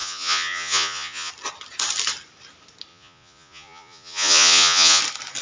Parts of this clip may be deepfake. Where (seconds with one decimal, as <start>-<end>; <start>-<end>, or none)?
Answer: 0.0-1.3; 2.9-5.0